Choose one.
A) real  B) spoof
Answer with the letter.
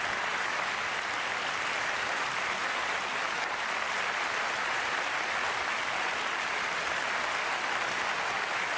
A